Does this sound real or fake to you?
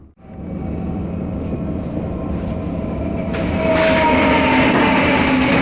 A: real